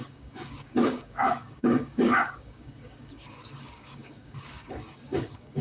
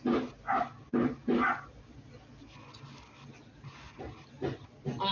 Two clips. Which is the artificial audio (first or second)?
first